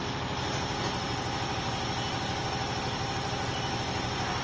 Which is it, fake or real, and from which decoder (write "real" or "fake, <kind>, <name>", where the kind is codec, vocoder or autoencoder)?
real